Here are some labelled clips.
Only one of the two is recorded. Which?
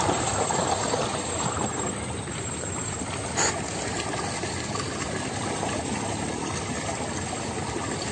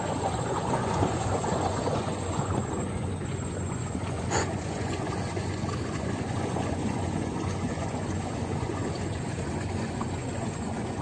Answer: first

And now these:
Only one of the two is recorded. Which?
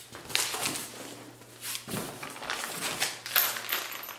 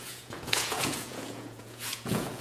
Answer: first